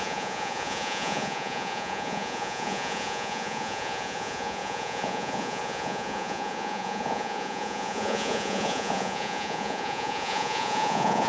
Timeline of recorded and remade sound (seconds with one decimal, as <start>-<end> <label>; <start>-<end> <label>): 0.0-11.3 remade